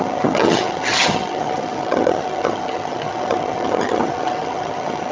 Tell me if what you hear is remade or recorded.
remade